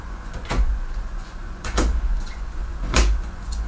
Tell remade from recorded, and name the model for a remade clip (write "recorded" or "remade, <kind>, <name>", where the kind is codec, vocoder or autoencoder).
remade, vocoder, Vocos